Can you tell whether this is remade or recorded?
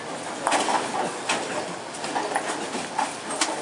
recorded